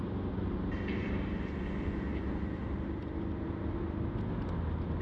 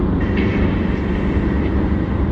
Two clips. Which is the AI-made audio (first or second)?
second